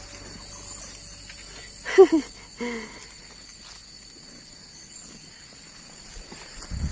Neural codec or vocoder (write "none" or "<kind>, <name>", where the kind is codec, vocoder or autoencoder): none